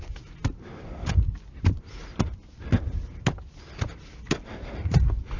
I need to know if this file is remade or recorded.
recorded